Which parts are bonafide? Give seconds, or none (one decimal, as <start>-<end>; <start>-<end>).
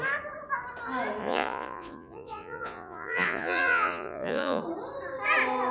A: 0.0-1.2; 4.6-5.7